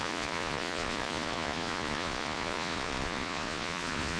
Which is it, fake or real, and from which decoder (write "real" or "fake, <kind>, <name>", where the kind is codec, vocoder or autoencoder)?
fake, vocoder, Vocos